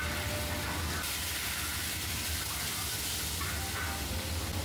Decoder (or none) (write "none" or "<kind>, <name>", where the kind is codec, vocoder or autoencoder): none